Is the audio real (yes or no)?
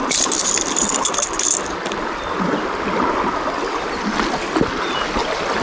yes